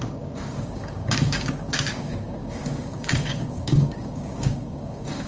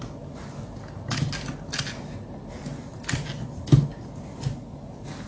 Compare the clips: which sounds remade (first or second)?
first